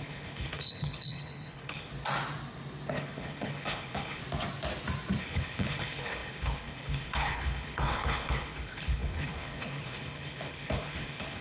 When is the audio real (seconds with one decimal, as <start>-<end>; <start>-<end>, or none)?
1.9-2.9; 4.2-5.2